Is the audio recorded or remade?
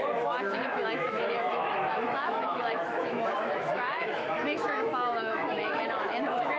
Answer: remade